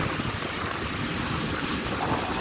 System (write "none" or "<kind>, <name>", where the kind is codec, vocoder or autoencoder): none